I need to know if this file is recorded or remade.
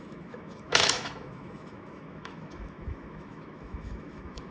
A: remade